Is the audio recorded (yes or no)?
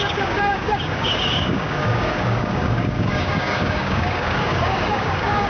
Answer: no